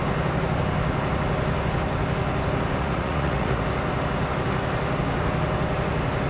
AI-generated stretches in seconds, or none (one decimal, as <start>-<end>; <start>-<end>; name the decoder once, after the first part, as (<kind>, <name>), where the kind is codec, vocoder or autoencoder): 2.8-3.6 (vocoder, Vocos)